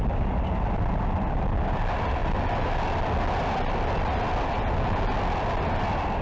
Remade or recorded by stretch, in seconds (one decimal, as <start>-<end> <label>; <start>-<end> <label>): 0.0-6.2 recorded